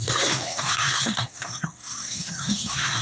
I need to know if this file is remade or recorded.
remade